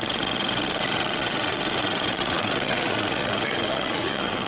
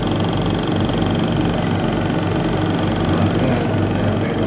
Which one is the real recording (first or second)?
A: second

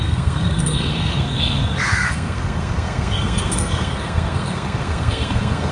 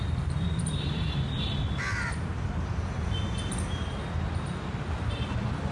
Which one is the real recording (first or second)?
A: second